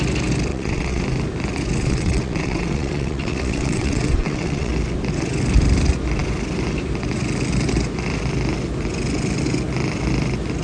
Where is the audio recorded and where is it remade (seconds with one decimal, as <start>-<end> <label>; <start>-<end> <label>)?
0.0-0.5 recorded; 0.5-1.0 remade; 1.0-1.8 recorded; 1.8-4.7 remade; 4.7-10.6 recorded